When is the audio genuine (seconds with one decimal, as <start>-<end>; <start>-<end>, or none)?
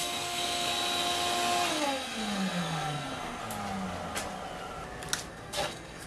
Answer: 0.7-1.7; 3.4-5.3